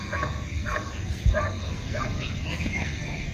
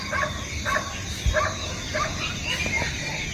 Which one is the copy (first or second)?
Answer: first